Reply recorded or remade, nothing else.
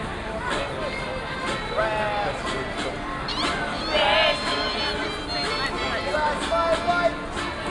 recorded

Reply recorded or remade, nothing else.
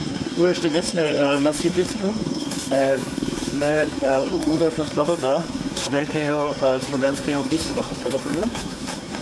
remade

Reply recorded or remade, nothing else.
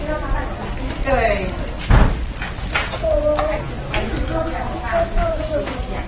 recorded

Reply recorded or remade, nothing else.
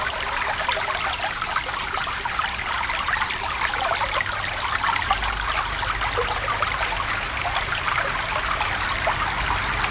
recorded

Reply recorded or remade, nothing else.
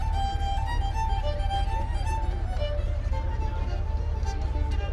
remade